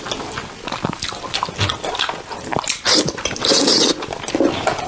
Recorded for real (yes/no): yes